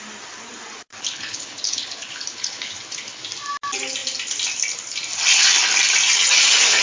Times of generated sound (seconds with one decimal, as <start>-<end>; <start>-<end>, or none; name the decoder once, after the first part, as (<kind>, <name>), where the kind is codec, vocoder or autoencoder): 0.9-3.2 (codec, HILCodec)